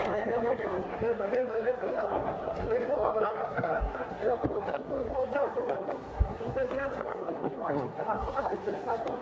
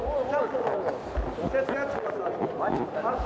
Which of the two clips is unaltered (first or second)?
second